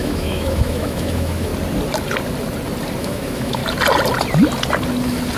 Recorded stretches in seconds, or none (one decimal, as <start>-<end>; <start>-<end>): 1.5-3.0; 3.6-5.4